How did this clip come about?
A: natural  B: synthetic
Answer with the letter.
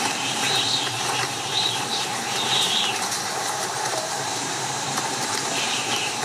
B